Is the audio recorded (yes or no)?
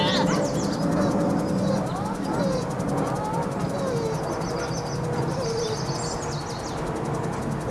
yes